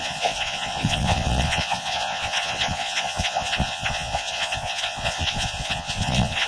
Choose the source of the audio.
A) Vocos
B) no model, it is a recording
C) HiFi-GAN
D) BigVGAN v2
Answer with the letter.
A